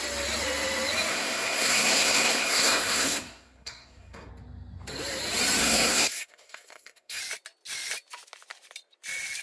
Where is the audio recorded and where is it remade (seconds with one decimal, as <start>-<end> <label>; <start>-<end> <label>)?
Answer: 0.0-1.1 recorded; 1.1-4.3 remade; 4.3-5.6 recorded; 5.6-7.2 remade; 7.2-9.4 recorded